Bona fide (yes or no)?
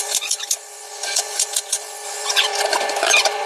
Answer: no